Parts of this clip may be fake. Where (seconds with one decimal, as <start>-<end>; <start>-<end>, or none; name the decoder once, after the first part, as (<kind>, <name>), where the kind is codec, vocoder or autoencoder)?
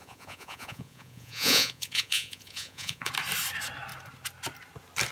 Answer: 0.0-3.1 (vocoder, Vocos)